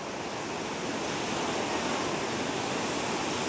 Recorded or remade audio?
recorded